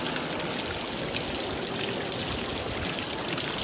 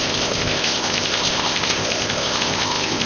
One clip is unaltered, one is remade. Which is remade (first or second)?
second